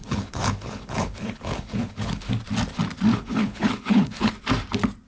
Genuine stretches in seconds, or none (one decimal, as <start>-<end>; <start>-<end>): 2.3-3.1; 4.3-5.1